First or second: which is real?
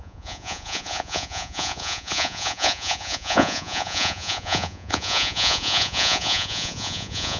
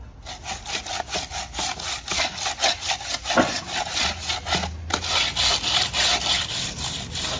second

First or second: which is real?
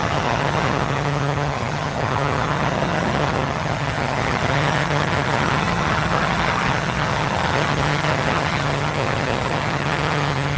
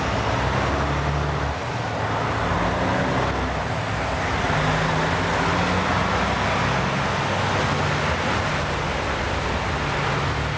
second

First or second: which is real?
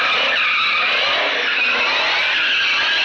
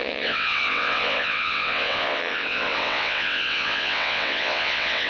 first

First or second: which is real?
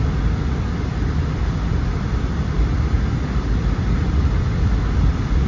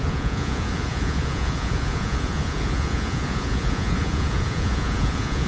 first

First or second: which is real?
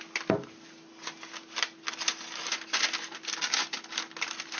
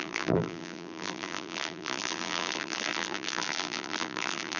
first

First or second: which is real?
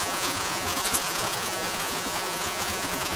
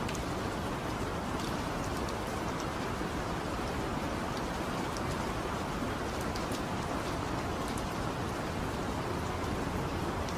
second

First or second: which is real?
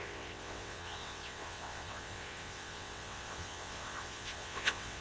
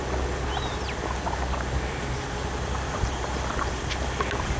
second